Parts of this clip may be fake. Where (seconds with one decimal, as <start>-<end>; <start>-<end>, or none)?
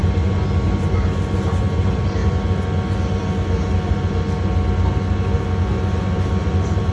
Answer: 1.8-2.2; 6.3-6.9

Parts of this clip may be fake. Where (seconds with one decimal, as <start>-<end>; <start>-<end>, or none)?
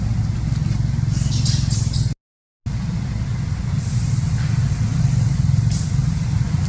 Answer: 4.9-6.3